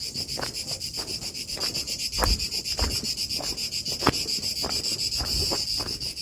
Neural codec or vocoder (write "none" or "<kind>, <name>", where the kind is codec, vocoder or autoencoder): none